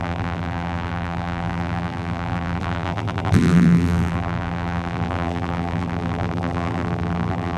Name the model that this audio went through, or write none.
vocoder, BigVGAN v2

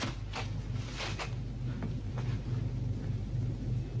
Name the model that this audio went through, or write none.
none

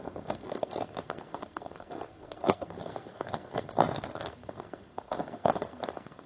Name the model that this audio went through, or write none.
codec, SNAC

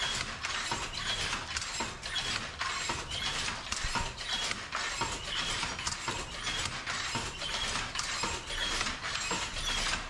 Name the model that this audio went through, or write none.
none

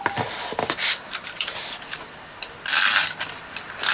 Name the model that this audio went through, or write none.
vocoder, BigVGAN v2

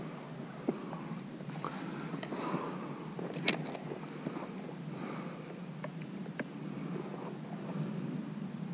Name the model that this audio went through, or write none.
none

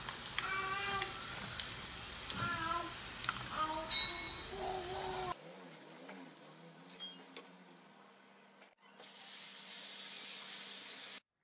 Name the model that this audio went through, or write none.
none